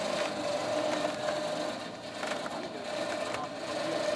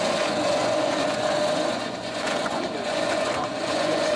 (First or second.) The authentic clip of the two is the first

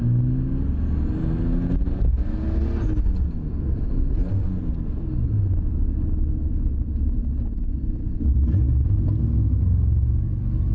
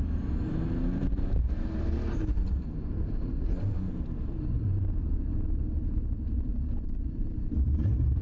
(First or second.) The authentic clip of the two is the first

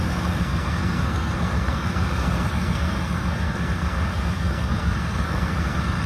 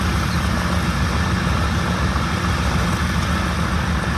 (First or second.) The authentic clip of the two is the second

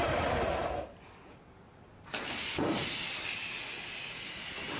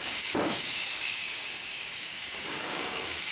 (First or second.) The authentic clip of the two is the first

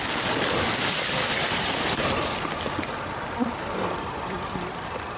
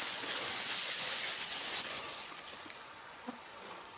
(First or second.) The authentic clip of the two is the first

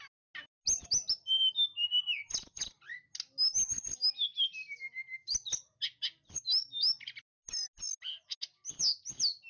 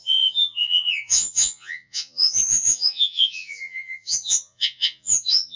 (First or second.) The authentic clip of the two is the first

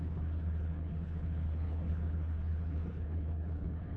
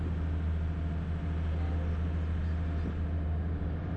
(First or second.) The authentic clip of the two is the second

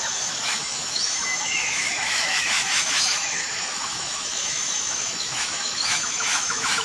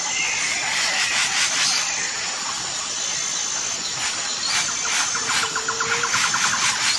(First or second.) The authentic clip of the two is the second